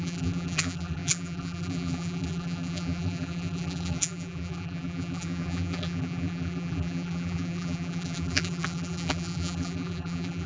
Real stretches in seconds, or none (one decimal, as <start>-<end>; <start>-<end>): none